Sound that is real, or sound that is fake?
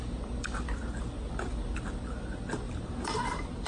real